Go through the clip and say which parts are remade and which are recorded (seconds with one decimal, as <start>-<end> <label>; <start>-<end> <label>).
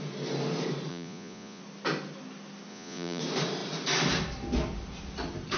0.0-0.9 recorded; 0.9-1.6 remade; 1.6-2.7 recorded; 2.7-3.2 remade; 3.2-5.6 recorded